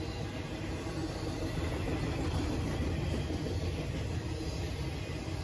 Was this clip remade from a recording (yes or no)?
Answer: no